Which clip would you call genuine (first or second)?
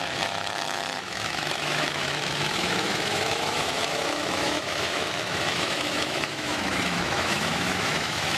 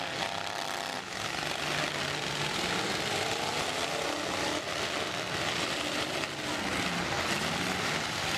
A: second